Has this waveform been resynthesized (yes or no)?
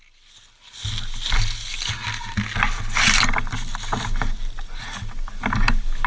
no